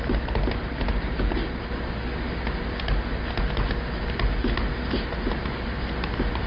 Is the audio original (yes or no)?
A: yes